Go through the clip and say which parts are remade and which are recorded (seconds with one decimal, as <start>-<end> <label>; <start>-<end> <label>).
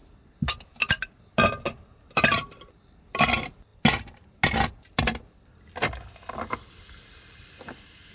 0.0-8.1 recorded